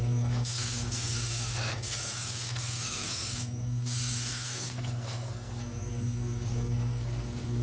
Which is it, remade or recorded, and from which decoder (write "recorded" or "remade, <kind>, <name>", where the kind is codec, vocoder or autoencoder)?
remade, codec, SNAC